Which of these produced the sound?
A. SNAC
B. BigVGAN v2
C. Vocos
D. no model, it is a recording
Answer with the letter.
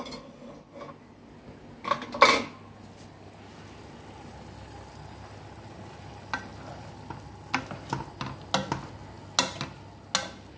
D